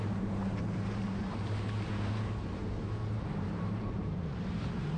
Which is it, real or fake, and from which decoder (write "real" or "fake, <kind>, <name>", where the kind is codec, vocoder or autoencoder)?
fake, vocoder, BigVGAN v2